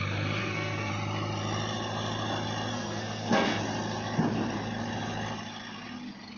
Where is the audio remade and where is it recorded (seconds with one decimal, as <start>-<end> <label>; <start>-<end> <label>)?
0.0-0.4 recorded; 0.4-0.9 remade; 0.9-2.7 recorded; 2.7-3.6 remade; 3.6-6.4 recorded